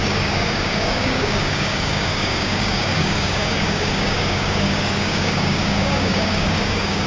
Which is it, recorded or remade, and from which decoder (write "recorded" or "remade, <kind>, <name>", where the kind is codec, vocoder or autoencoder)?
remade, codec, DAC